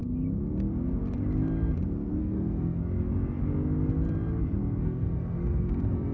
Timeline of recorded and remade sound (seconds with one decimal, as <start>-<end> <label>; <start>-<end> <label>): 0.0-2.2 recorded; 2.2-2.8 remade; 2.8-4.8 recorded; 4.8-6.1 remade